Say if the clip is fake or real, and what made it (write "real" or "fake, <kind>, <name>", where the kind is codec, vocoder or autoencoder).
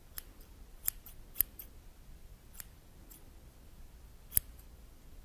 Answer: fake, vocoder, BigVGAN v2